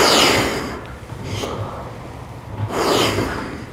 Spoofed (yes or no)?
no